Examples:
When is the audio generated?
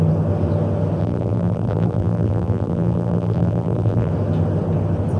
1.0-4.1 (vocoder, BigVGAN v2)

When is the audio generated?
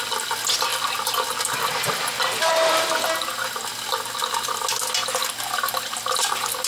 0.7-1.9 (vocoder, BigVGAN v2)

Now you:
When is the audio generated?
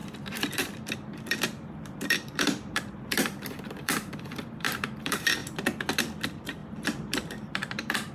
0.0-5.4 (vocoder, BigVGAN v2); 6.0-8.1